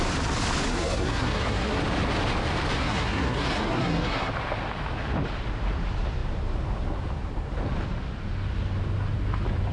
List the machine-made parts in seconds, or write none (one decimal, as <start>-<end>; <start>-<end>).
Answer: 0.7-1.8; 2.8-4.3